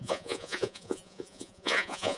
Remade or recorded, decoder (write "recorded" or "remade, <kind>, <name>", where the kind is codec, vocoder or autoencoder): remade, vocoder, Vocos